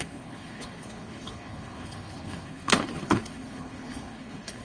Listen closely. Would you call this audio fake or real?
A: fake